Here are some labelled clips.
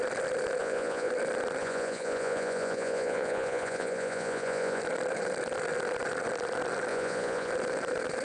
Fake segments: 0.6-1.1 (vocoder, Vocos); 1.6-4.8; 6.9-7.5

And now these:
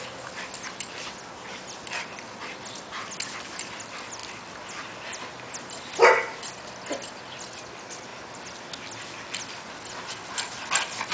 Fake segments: none

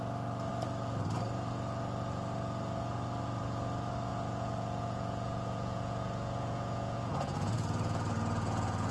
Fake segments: 4.1-8.9 (vocoder, Vocos)

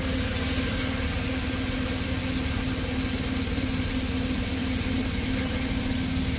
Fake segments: none